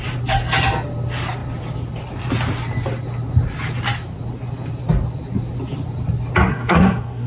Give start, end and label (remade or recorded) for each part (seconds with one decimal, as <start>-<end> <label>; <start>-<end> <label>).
0.0-6.5 recorded; 6.5-7.3 remade